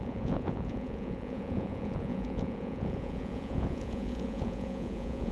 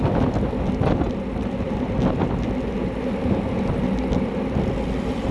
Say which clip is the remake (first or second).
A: first